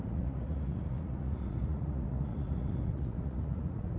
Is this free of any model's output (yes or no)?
no